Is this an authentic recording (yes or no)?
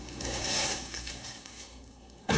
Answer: no